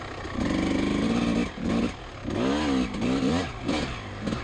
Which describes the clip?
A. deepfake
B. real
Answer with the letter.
B